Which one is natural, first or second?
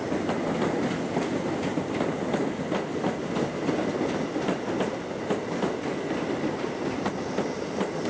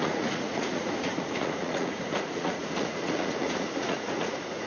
first